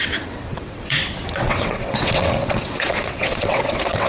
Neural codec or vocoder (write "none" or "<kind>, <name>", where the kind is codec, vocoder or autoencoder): vocoder, WaveNeXt